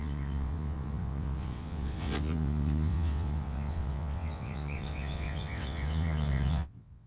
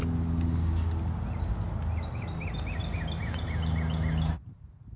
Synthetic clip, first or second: first